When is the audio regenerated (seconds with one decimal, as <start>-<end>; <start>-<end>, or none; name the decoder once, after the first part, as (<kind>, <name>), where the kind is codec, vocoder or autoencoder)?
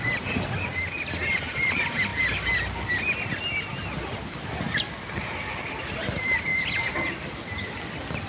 none